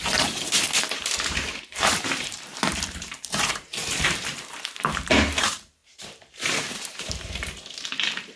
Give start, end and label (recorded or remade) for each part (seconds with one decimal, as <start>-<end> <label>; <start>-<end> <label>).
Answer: 0.0-8.4 remade